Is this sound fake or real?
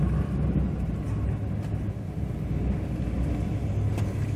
real